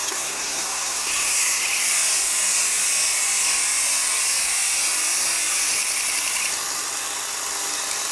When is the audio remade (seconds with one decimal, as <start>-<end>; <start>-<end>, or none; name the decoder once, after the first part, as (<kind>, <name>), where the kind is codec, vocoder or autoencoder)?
0.0-1.6 (codec, SNAC)